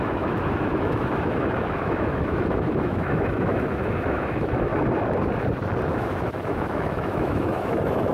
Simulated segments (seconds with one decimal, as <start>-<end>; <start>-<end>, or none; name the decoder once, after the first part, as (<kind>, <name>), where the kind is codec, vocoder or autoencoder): 0.0-4.7 (autoencoder, DAC-VAE); 5.9-8.1